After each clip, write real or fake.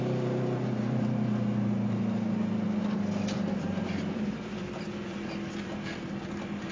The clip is real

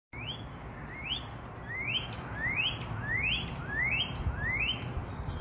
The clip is real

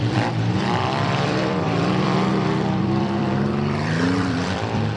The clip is fake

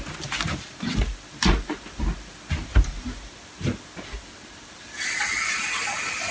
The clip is real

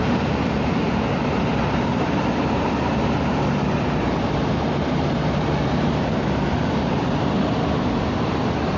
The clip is fake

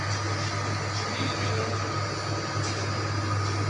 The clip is real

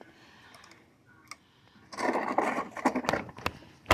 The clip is real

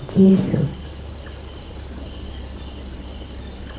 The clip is real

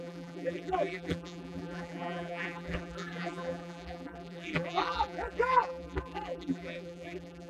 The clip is fake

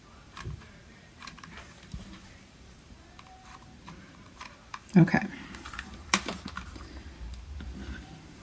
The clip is fake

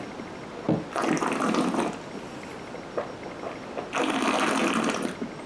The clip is real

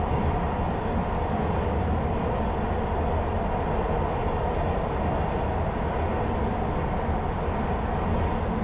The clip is real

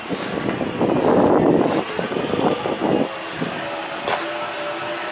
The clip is real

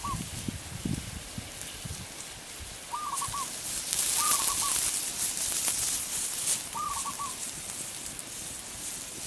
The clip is real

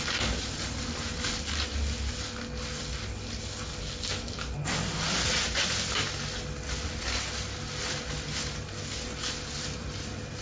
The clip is real